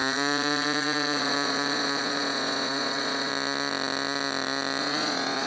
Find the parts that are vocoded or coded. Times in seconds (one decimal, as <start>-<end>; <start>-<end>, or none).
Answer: 0.0-3.3; 4.8-5.5